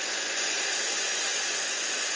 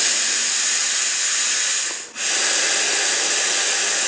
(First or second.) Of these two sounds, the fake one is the first